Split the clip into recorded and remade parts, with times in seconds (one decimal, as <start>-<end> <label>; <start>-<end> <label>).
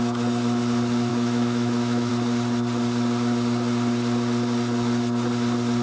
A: 0.0-1.1 recorded; 1.1-2.1 remade; 2.1-5.8 recorded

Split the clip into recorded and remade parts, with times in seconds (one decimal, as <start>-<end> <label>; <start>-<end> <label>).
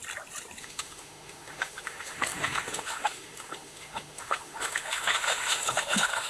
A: 0.0-0.6 recorded; 0.6-6.3 remade